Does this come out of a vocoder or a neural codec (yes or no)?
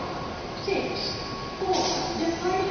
no